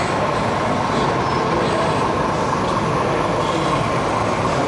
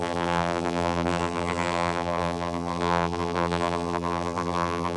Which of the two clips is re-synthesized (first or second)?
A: second